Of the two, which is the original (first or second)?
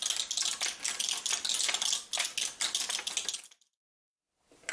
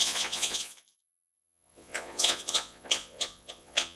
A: first